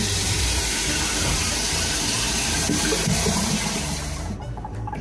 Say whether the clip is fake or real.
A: fake